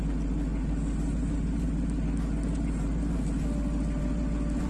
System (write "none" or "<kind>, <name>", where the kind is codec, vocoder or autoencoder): none